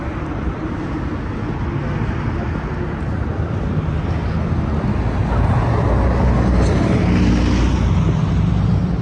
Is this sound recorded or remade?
recorded